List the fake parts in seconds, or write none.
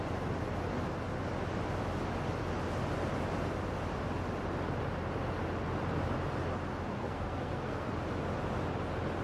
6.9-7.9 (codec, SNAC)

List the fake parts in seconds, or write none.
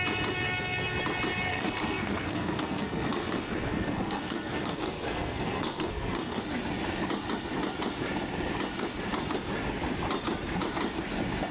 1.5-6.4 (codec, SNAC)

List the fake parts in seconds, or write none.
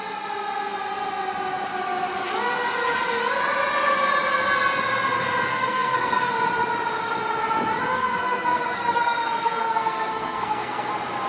5.5-6.3 (codec, SNAC); 7.9-10.9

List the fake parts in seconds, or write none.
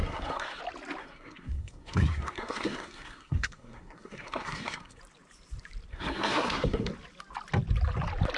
0.0-0.6 (codec, SNAC); 1.0-5.0; 5.9-6.9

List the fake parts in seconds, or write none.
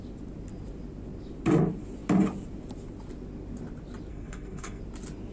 4.1-4.8 (codec, SNAC)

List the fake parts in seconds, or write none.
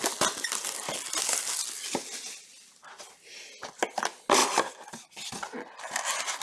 none